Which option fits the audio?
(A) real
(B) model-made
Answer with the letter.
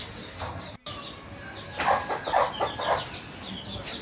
A